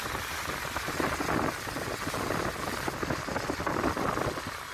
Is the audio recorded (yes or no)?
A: yes